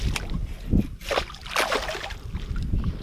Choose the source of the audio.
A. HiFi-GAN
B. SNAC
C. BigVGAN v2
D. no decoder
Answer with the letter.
D